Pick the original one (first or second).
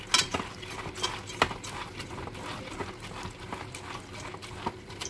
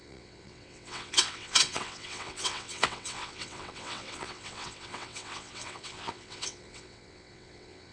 first